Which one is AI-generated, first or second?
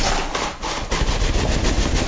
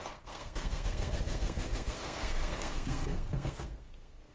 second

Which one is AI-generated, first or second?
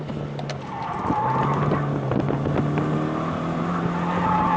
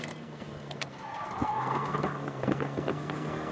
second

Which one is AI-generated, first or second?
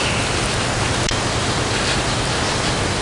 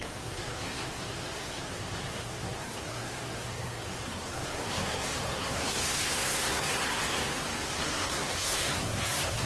second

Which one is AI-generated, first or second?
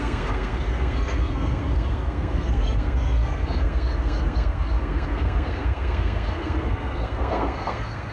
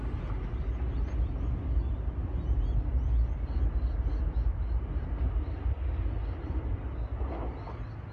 first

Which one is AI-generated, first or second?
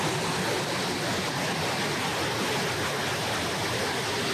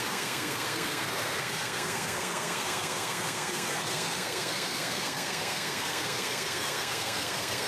second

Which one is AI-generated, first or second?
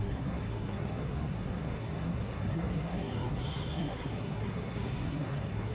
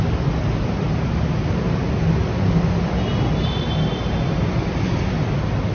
first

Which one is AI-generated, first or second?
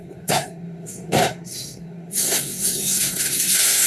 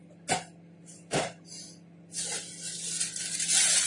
first